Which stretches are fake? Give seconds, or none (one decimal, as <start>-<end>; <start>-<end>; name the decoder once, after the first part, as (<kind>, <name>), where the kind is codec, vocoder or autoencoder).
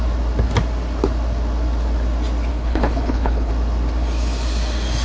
2.5-3.5 (codec, HILCodec)